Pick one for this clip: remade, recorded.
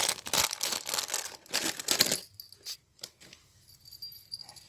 recorded